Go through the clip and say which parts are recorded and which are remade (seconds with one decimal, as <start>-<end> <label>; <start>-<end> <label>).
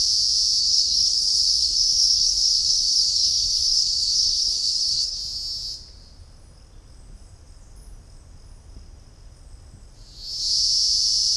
0.0-0.6 recorded; 0.6-5.2 remade; 5.2-11.4 recorded